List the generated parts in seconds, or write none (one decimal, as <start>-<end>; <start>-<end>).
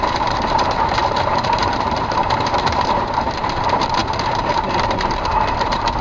0.0-4.0; 4.5-6.0